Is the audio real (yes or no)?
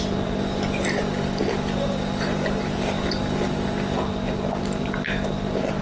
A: yes